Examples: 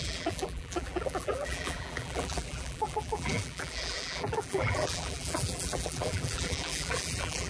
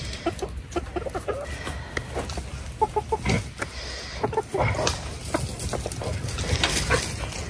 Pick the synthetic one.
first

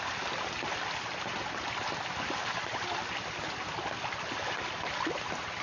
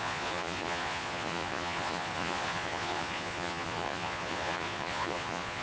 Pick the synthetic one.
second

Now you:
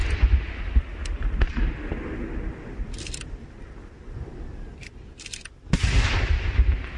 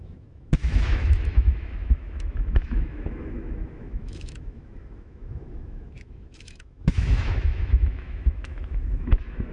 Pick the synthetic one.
second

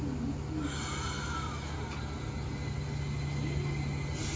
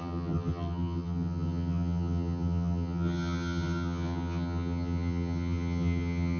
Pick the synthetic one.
second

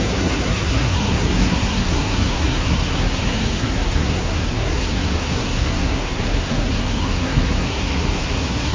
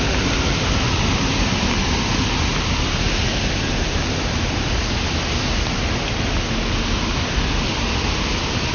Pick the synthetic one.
first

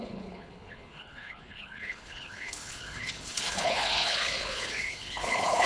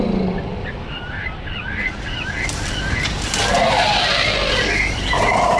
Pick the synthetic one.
first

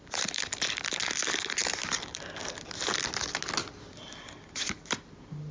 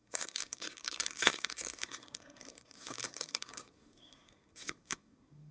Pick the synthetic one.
second